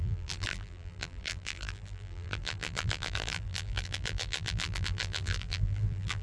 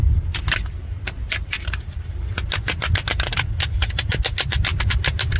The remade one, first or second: first